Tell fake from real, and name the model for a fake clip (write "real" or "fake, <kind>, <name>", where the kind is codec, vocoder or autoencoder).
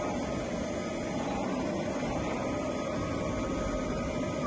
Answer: real